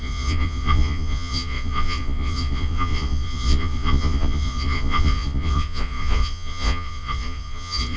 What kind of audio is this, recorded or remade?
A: remade